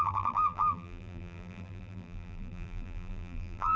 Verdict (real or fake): fake